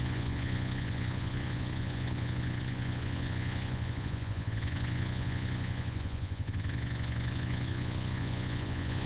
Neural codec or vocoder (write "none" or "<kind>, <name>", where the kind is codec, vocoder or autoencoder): vocoder, Vocos